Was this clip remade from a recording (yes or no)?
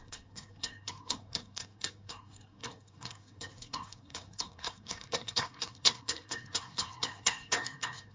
yes